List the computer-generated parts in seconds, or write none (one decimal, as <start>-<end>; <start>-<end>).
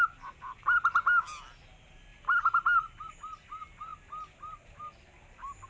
none